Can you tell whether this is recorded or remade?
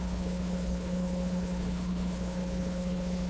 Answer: remade